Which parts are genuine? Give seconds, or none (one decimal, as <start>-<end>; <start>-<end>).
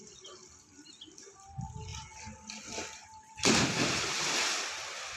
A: 0.0-5.2